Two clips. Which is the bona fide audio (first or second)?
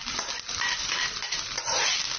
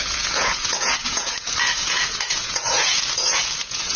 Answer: first